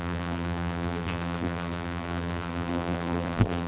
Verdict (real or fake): fake